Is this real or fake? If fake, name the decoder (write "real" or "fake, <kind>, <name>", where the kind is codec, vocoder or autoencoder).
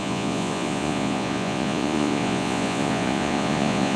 fake, vocoder, Vocos